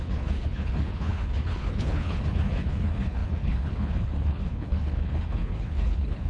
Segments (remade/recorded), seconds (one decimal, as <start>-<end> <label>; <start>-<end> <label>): 0.0-6.3 remade